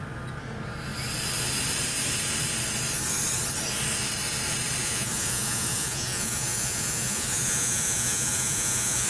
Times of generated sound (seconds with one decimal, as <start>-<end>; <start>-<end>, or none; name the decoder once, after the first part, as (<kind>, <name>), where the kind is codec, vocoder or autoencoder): 4.8-9.1 (vocoder, Vocos)